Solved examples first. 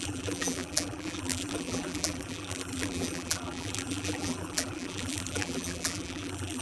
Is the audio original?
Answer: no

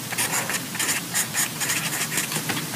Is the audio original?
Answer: yes